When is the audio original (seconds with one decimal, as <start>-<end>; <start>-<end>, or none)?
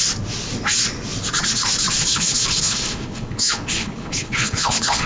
0.0-2.0